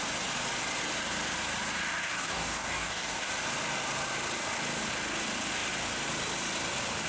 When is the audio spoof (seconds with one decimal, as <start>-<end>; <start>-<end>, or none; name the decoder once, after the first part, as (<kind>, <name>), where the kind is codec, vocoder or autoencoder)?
2.0-3.3 (codec, DAC)